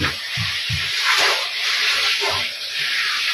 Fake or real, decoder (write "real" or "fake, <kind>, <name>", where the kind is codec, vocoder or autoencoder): fake, vocoder, BigVGAN v2